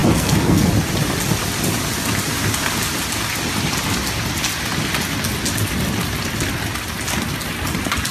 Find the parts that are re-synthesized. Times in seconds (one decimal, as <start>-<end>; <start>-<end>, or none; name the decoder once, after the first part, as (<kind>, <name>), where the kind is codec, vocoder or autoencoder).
0.0-0.7 (codec, SNAC)